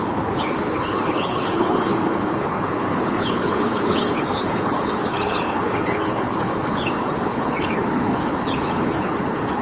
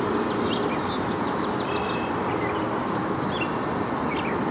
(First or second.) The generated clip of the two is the first